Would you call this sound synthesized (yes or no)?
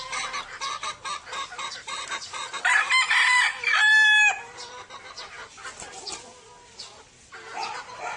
no